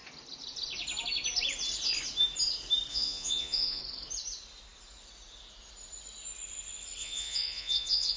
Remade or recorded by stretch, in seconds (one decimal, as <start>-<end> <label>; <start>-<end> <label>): 0.0-2.9 recorded; 2.9-3.8 remade; 3.8-7.0 recorded; 7.0-8.2 remade